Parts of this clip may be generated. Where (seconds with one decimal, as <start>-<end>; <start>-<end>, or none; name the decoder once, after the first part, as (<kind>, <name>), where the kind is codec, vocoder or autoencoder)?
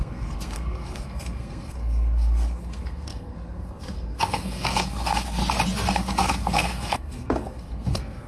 0.0-5.4 (codec, SNAC); 5.9-8.3